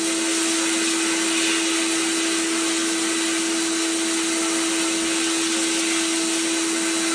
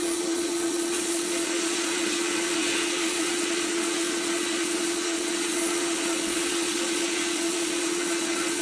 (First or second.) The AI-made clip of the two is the second